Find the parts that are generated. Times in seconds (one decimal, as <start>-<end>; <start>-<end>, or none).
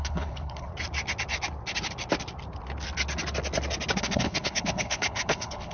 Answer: 0.0-0.7; 4.0-5.7